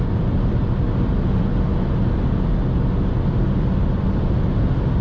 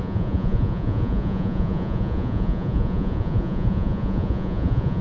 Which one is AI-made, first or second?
second